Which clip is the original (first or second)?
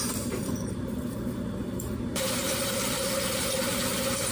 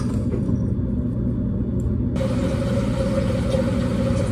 second